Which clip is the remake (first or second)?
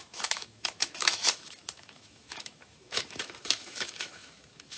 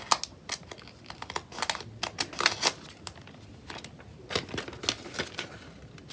first